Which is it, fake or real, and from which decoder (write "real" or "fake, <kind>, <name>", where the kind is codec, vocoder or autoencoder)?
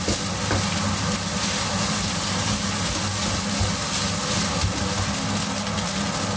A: real